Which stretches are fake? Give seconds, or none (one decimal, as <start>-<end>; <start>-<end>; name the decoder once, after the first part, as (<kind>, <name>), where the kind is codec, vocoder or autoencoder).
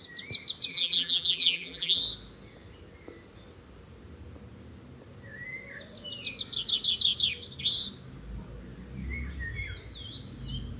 0.7-2.0 (vocoder, BigVGAN v2)